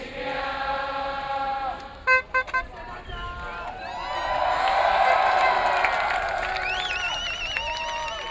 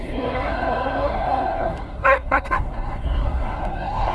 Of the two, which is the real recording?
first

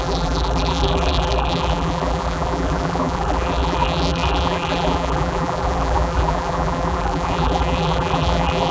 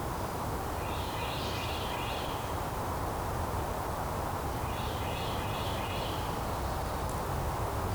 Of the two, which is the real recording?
second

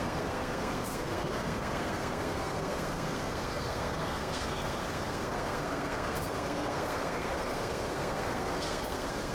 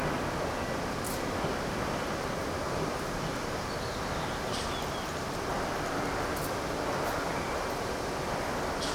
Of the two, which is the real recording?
second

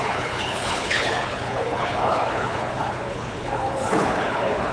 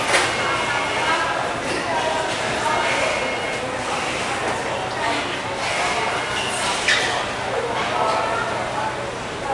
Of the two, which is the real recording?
second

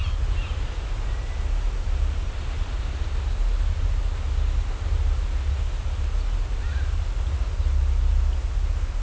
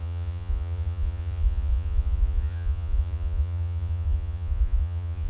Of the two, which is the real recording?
first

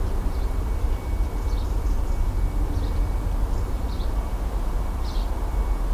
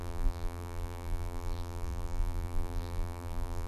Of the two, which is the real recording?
first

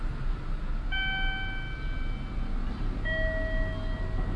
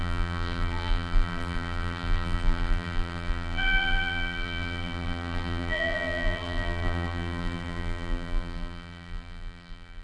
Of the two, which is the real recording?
first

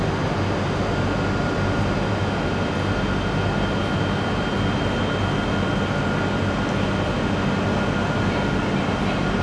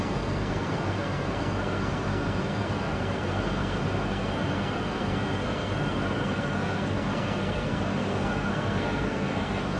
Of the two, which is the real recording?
first